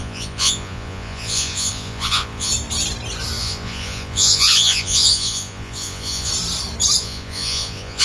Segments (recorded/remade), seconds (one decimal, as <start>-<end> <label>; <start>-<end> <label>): 0.0-2.5 remade; 2.5-3.4 recorded; 3.4-6.3 remade; 6.3-7.0 recorded; 7.0-8.0 remade